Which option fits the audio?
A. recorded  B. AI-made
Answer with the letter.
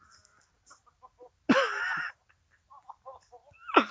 A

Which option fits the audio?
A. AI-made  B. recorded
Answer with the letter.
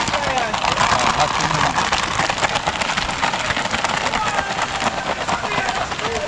B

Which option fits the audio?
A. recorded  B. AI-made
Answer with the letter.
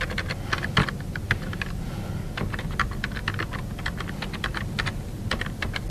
A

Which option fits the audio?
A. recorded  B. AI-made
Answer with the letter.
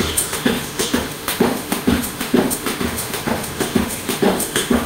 B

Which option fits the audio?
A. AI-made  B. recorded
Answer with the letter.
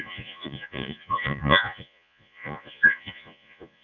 A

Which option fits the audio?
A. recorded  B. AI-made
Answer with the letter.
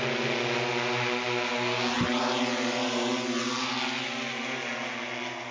A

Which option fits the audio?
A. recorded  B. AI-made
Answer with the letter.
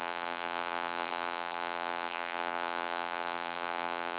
B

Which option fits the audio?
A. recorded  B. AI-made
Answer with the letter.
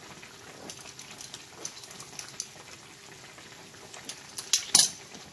A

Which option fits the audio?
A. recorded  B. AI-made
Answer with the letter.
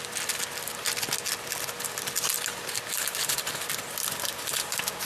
A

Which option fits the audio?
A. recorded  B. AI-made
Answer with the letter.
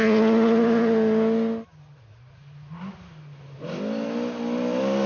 A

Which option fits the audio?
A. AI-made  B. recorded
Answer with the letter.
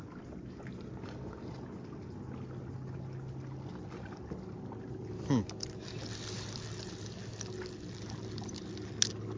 B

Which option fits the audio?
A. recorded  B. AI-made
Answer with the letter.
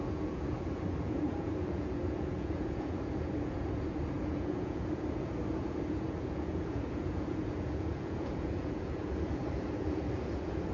B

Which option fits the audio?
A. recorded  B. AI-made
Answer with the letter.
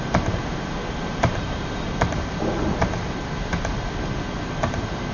B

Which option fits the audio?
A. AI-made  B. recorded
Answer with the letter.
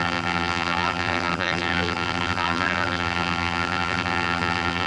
A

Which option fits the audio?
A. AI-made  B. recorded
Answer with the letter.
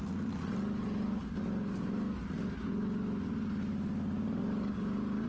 B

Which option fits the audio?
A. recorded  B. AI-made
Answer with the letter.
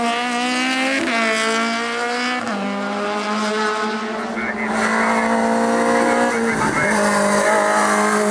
A